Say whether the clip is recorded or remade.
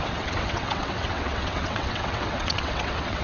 remade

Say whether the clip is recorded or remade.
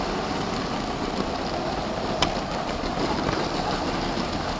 recorded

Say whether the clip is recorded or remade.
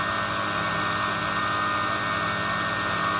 recorded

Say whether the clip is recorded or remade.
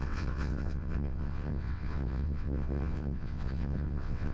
remade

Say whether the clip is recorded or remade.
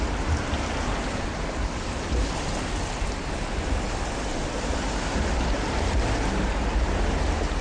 recorded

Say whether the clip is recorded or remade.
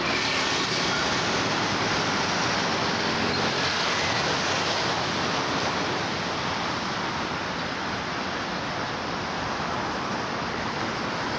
recorded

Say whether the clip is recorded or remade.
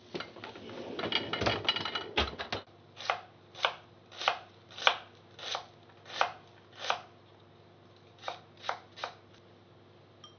recorded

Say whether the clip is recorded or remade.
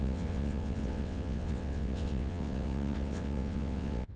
remade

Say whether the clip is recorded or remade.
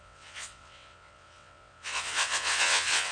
remade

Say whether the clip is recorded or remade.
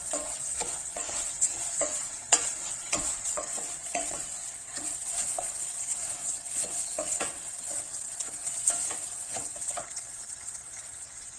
remade